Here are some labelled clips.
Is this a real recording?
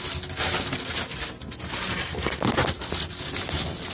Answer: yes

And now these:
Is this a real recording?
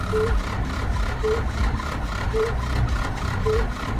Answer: yes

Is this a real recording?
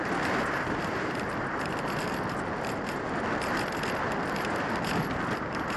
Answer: yes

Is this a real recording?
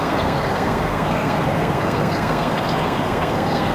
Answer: no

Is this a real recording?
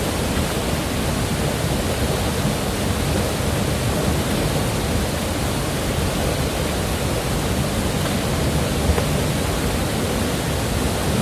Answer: yes